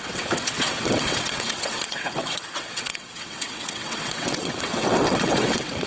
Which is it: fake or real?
fake